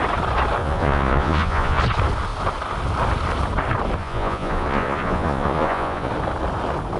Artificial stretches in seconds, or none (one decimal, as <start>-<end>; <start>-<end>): 0.6-1.8; 4.0-6.1